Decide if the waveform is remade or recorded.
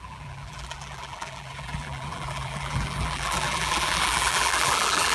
remade